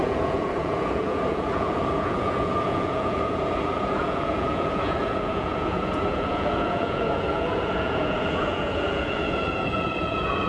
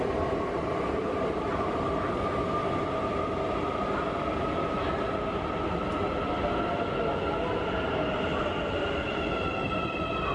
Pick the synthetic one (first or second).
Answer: first